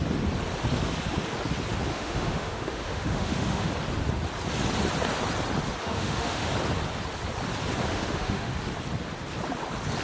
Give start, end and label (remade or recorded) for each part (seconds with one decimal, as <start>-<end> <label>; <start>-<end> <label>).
0.0-1.9 recorded; 1.9-3.7 remade; 3.7-5.8 recorded; 5.8-6.5 remade; 6.5-7.9 recorded; 7.9-8.5 remade; 8.5-10.0 recorded